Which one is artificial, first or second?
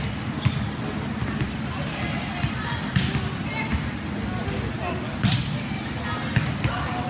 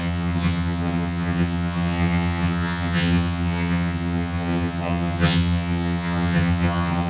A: second